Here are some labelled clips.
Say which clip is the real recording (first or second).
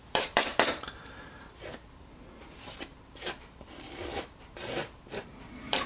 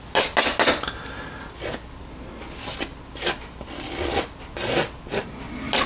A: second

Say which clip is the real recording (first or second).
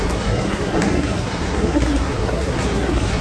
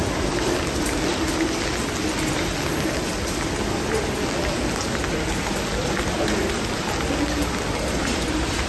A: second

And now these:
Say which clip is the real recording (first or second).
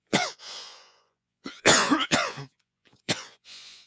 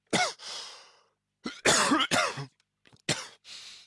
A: second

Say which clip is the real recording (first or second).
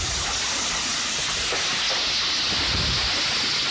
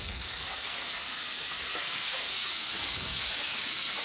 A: first